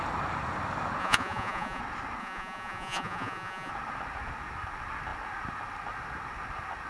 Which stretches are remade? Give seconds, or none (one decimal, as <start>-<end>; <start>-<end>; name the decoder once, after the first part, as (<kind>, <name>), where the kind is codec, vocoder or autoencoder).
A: 1.0-1.8 (vocoder, Vocos); 2.2-3.7